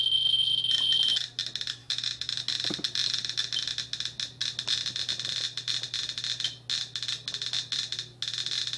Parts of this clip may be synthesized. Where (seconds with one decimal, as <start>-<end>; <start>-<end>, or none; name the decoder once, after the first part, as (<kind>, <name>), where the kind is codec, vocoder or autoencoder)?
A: 1.8-2.4 (autoencoder, DAC-VAE)